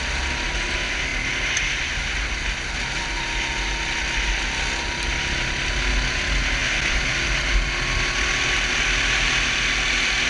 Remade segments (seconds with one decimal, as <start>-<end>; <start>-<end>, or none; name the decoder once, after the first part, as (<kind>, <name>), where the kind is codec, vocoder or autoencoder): none